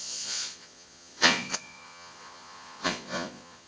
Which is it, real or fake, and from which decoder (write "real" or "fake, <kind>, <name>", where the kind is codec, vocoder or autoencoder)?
fake, vocoder, Vocos